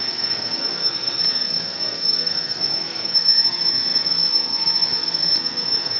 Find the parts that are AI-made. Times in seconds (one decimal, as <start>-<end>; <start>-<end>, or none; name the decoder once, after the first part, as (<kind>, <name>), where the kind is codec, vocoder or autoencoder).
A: 0.0-6.0 (codec, SNAC)